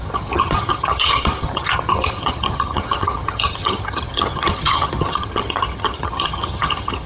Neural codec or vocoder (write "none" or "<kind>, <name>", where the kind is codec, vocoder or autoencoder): vocoder, HiFi-GAN